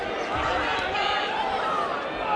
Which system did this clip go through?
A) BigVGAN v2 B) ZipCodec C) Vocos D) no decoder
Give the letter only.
D